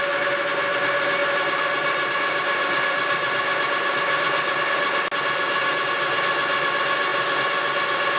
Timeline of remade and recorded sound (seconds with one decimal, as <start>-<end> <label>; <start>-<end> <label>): 0.0-8.2 recorded